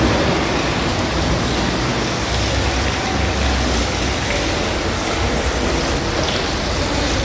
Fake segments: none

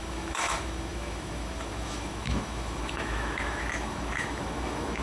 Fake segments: 0.0-5.0 (autoencoder, DAC-VAE)

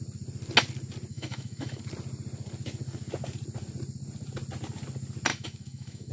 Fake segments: 1.1-1.8 (autoencoder, DAC-VAE); 5.3-6.1

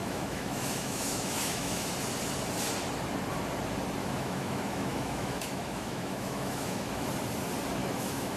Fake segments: 0.0-1.9 (autoencoder, DAC-VAE); 4.0-7.1; 7.8-8.4

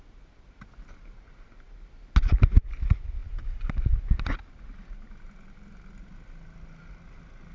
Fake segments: none

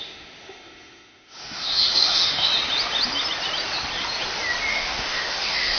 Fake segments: 0.0-2.5 (autoencoder, DAC-VAE); 4.7-5.8

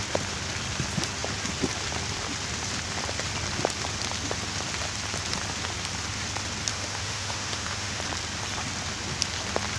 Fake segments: 6.7-8.0 (autoencoder, DAC-VAE)